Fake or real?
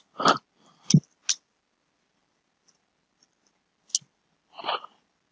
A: real